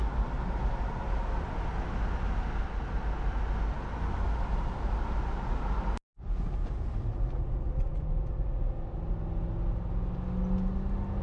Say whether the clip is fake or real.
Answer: real